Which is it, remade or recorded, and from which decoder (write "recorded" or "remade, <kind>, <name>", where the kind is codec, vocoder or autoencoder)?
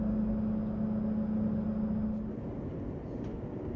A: recorded